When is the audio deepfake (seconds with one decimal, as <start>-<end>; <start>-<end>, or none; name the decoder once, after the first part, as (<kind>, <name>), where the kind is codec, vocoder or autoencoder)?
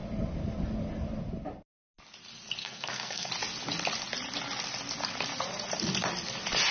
2.6-3.3 (codec, SNAC)